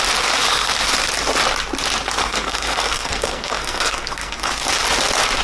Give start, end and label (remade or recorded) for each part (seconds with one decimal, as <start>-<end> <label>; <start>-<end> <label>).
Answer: 0.0-2.2 recorded; 2.2-4.5 remade; 4.5-5.4 recorded